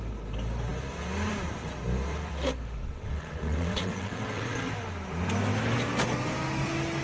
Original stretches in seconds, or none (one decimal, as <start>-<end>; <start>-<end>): 0.0-2.8; 4.7-7.0